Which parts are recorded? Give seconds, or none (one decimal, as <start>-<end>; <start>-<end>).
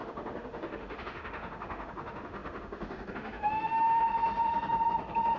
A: 4.0-5.4